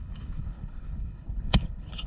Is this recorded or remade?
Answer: remade